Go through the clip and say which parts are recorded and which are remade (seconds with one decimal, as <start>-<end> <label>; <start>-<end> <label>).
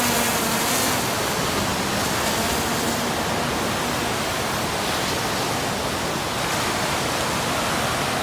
0.0-8.2 recorded